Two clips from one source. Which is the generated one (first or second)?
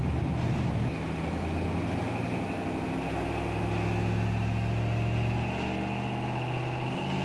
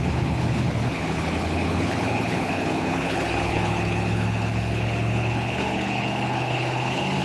second